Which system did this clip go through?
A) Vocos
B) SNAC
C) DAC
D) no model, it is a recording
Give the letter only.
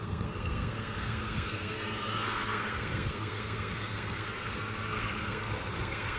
B